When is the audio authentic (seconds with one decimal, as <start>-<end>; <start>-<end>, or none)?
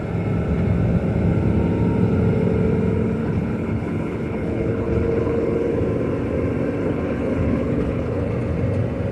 0.0-3.2; 5.8-6.8; 8.3-9.1